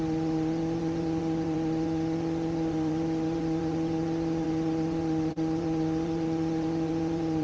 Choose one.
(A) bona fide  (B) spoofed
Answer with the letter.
B